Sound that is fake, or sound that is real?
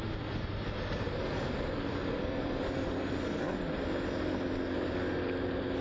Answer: real